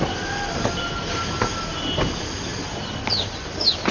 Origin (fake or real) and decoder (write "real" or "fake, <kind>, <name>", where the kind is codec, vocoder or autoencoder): real